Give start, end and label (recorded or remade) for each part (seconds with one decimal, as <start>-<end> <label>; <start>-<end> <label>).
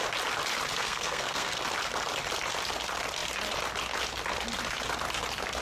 0.0-0.8 recorded; 0.8-1.6 remade; 1.6-5.6 recorded